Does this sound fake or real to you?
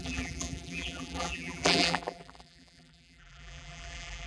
fake